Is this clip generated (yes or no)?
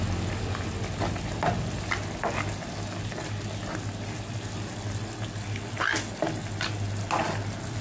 no